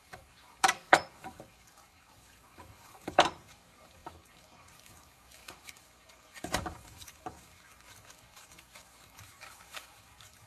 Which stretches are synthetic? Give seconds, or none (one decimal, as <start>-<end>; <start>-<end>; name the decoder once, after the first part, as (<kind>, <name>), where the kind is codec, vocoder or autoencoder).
0.0-10.5 (codec, DAC)